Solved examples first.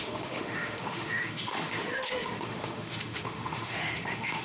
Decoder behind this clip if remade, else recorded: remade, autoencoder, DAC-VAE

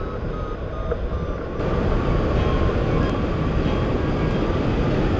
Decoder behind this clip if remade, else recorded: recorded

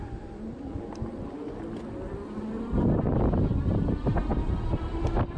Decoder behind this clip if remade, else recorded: recorded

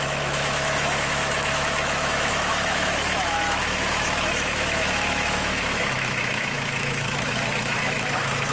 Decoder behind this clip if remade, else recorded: remade, autoencoder, DAC-VAE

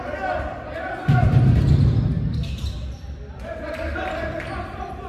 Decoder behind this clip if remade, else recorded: recorded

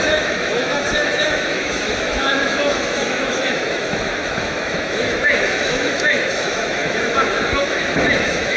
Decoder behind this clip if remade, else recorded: remade, autoencoder, DAC-VAE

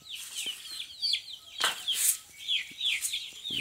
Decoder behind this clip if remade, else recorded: recorded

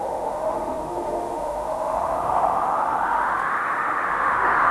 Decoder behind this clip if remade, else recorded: remade, autoencoder, DAC-VAE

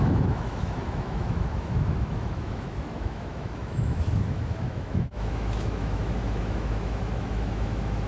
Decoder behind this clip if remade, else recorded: remade, autoencoder, DAC-VAE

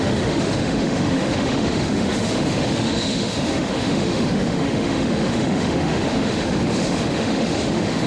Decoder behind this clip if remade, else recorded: remade, autoencoder, DAC-VAE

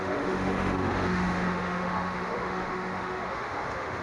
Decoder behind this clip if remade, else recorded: remade, autoencoder, DAC-VAE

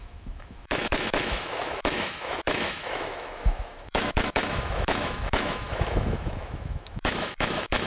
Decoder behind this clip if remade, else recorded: remade, autoencoder, DAC-VAE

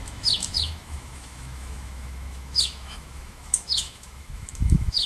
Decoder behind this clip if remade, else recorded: remade, autoencoder, DAC-VAE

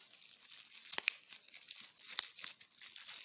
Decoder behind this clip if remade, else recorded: recorded